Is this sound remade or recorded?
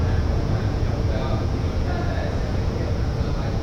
remade